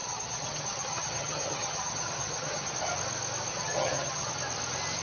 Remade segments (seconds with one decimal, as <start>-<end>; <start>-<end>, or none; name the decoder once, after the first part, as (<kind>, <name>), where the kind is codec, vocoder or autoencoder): 0.0-2.7 (vocoder, HiFi-GAN); 3.5-4.3